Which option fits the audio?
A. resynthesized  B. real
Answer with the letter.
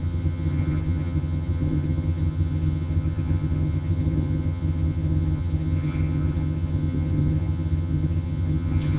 A